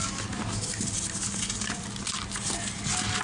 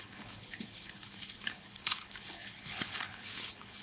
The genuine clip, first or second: first